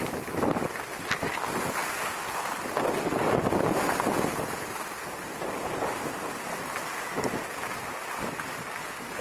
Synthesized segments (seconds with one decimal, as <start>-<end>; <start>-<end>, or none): none